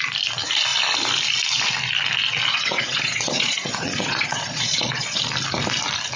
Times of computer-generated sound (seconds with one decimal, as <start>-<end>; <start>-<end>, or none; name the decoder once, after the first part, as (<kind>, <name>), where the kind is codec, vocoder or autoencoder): 2.5-5.2 (vocoder, Vocos)